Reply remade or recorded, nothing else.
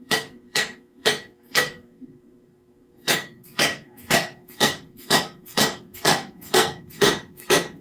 remade